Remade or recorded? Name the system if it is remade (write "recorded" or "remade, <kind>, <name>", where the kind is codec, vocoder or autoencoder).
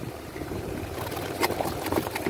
remade, vocoder, BigVGAN v2